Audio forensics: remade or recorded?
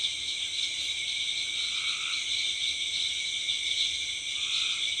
recorded